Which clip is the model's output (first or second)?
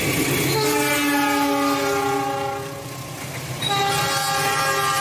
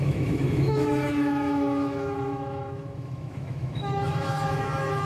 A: second